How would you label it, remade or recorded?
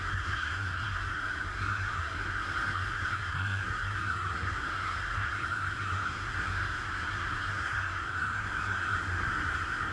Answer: remade